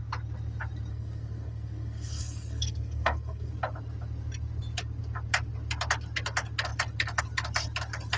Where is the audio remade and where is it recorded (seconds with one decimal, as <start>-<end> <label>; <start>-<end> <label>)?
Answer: 0.0-0.9 recorded; 0.9-3.5 remade; 3.5-8.2 recorded